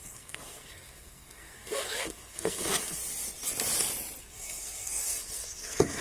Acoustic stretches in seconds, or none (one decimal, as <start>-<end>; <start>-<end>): 3.0-4.2